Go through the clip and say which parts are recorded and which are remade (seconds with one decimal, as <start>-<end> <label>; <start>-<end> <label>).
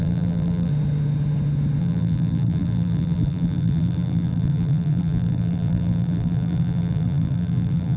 0.0-0.7 remade; 0.7-1.8 recorded; 1.8-8.0 remade